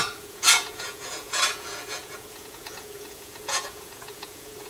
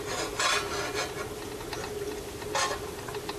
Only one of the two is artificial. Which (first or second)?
first